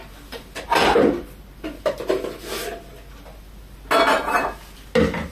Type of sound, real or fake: real